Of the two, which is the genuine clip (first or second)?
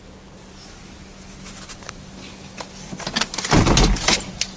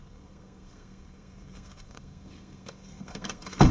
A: first